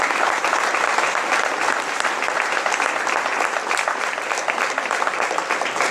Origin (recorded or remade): recorded